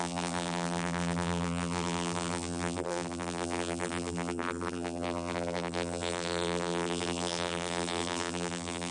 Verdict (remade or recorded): remade